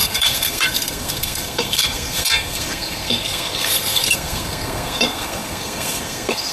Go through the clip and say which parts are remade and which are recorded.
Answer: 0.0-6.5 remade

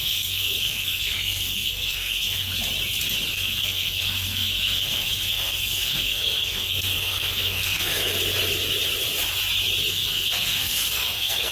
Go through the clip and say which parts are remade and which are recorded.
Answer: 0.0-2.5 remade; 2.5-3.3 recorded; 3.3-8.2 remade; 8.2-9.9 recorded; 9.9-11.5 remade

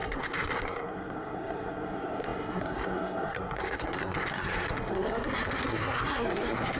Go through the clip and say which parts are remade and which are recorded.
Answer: 0.0-6.8 remade